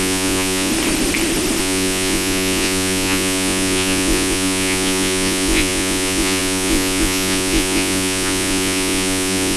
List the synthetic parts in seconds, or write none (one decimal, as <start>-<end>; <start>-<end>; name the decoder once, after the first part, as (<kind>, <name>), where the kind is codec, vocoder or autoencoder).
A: 0.0-0.7 (vocoder, Vocos); 1.6-9.6

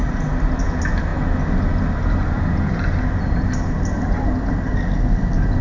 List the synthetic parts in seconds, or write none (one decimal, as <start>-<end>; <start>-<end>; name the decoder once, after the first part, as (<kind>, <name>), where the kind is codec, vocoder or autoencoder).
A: none

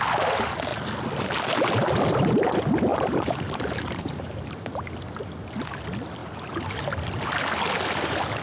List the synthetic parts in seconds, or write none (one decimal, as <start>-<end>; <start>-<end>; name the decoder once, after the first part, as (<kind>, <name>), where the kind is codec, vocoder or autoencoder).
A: 2.9-4.9 (vocoder, BigVGAN v2)